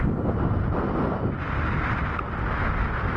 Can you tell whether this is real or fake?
real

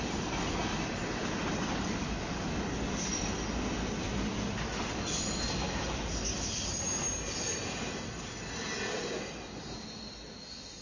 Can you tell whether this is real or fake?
real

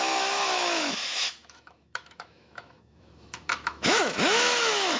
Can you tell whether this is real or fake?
fake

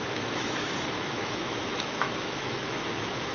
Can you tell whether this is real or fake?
fake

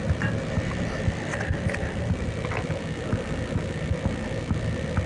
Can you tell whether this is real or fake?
real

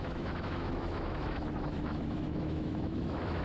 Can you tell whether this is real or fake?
fake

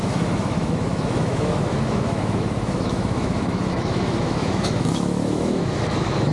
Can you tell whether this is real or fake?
fake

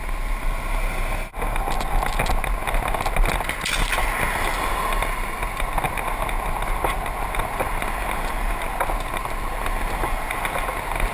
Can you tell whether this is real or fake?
real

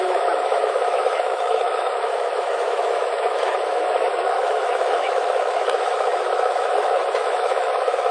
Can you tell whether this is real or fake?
fake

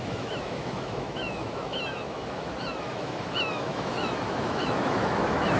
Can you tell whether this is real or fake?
fake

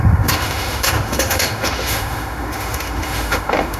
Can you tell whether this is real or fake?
fake